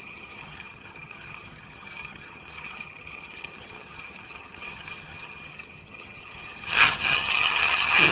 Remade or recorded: remade